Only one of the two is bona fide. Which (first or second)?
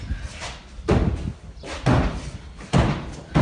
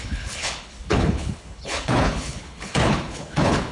first